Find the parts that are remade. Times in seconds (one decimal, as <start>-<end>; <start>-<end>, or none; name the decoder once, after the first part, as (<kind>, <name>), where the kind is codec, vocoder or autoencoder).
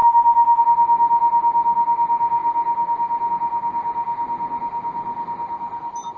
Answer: 0.0-0.6 (autoencoder, DAC-VAE)